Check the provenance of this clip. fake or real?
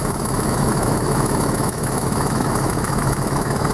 fake